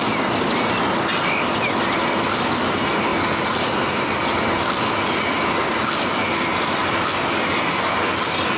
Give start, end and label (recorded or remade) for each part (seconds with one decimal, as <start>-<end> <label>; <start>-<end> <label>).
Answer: 0.0-8.6 recorded

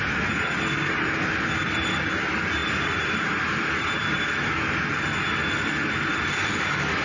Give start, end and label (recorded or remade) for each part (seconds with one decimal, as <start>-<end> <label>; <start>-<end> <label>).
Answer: 0.0-2.6 recorded; 2.6-4.2 remade; 4.2-7.0 recorded

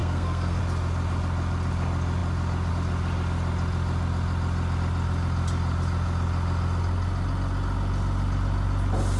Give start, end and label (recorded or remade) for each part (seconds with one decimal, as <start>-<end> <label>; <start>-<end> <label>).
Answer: 0.0-0.6 remade; 0.6-9.2 recorded

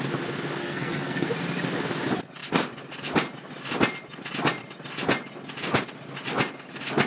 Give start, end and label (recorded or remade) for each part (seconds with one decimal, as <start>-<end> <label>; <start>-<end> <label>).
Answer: 0.0-0.6 recorded; 0.6-1.3 remade; 1.3-7.1 recorded